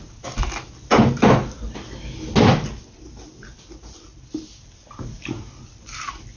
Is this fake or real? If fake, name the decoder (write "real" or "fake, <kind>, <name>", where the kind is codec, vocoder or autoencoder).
real